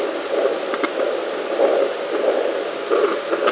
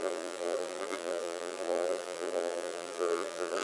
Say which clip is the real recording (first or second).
first